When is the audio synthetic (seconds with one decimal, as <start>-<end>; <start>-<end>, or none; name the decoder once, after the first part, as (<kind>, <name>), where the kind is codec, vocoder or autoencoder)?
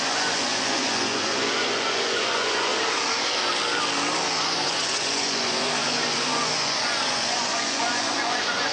0.0-2.7 (vocoder, Vocos); 4.4-8.7